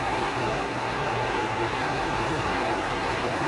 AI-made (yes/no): yes